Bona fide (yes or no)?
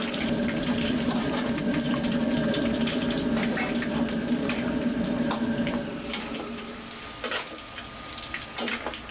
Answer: no